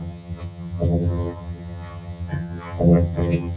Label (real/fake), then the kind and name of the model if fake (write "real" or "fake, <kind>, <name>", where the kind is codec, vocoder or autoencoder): fake, vocoder, HiFi-GAN